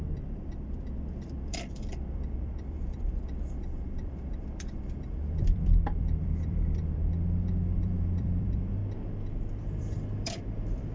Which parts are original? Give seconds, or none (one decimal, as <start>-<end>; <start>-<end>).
8.8-9.6

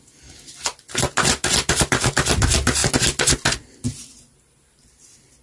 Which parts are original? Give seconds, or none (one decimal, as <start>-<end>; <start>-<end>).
0.0-5.4

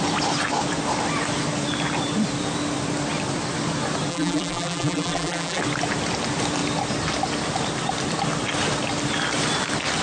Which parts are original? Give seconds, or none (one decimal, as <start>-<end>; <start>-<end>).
0.0-4.1; 5.6-10.0

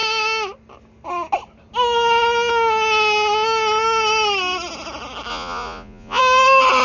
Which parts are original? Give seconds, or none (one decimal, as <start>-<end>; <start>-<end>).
0.0-5.3; 6.2-6.8

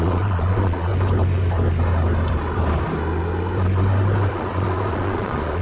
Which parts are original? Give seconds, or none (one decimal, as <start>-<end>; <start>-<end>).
0.9-4.3